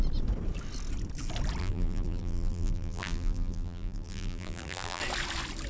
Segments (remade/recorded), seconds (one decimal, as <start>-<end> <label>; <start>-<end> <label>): 0.0-1.6 recorded; 1.6-5.0 remade; 5.0-5.7 recorded